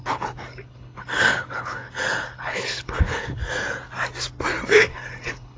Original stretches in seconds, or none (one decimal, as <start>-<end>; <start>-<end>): 3.4-4.7